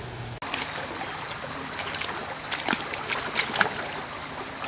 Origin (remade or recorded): recorded